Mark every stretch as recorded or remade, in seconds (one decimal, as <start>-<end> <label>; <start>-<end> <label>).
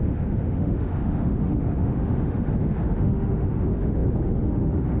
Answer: 0.0-5.0 remade